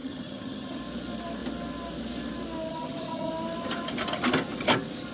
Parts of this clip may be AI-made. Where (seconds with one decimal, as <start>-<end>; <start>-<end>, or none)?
0.0-0.8; 2.7-3.3